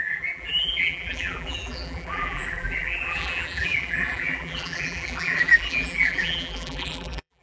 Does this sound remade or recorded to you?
remade